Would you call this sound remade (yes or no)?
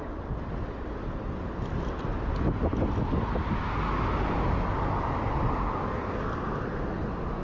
no